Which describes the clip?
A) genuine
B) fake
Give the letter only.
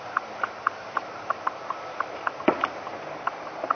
B